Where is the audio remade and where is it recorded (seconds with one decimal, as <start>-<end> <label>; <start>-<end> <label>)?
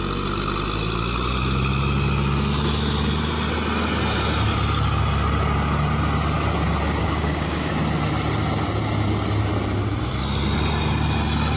0.0-7.0 recorded; 7.0-7.7 remade; 7.7-11.6 recorded